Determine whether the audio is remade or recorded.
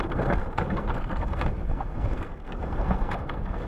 remade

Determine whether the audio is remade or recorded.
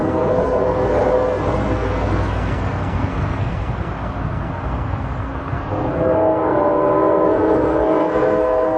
remade